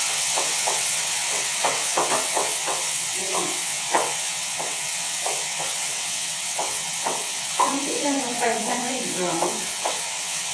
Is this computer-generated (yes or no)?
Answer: yes